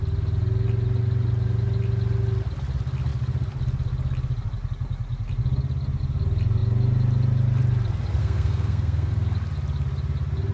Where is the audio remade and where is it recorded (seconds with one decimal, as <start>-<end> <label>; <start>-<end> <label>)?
0.0-8.2 recorded; 8.2-9.1 remade; 9.1-10.5 recorded